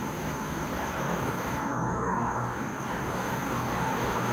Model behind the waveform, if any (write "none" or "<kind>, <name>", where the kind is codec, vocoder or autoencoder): codec, DAC